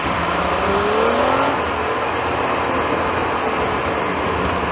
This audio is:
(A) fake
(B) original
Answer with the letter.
B